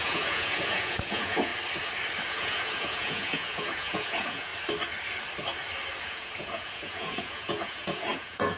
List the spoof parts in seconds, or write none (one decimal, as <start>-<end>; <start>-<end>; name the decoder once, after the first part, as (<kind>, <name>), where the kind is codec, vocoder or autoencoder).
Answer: 0.0-1.5 (vocoder, Vocos); 2.3-4.5; 6.0-8.6